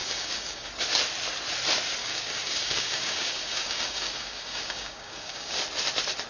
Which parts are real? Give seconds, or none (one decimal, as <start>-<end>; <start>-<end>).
0.7-2.0; 5.6-6.3

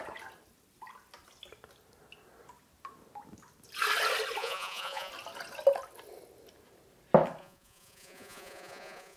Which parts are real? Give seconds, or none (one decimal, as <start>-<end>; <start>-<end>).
0.0-4.4; 5.1-7.4

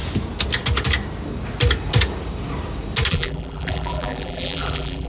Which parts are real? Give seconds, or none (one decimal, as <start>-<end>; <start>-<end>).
0.0-3.1

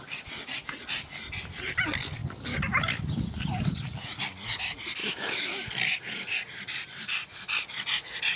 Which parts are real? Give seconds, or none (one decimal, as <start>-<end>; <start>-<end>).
0.0-5.0; 5.7-8.4